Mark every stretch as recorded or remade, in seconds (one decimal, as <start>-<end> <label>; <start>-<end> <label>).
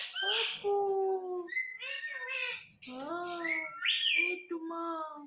0.0-5.3 recorded